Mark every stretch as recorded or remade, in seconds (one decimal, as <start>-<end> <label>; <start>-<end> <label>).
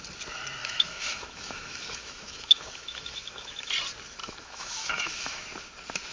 0.0-0.6 recorded; 0.6-3.7 remade; 3.7-4.2 recorded; 4.2-5.4 remade; 5.4-6.1 recorded